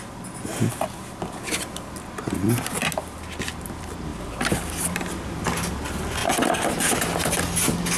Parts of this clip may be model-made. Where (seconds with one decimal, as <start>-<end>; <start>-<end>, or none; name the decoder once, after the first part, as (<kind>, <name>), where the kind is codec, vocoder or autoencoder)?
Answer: none